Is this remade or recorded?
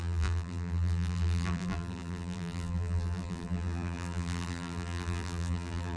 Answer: remade